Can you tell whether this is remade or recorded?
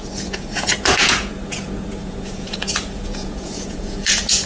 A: remade